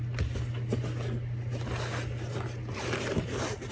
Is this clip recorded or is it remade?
recorded